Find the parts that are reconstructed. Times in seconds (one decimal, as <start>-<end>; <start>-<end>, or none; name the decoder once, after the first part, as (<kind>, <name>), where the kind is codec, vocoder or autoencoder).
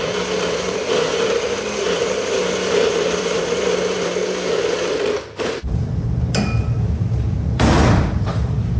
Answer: 0.0-4.2 (vocoder, BigVGAN v2); 5.2-8.8